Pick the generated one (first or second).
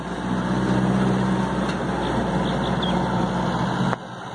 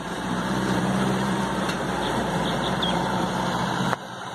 second